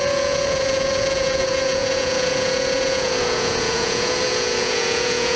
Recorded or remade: remade